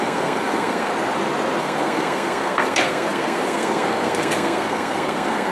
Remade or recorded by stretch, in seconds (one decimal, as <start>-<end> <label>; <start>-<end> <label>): 0.0-0.9 remade; 0.9-1.6 recorded; 1.6-5.5 remade